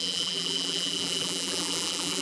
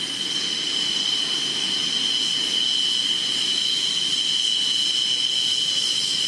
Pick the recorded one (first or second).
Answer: second